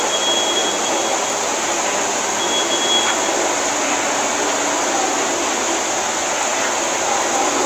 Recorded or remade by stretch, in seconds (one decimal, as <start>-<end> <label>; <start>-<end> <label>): 0.0-7.7 recorded